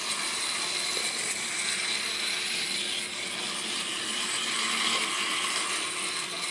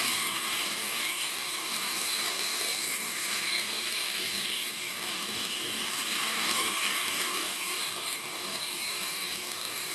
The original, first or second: first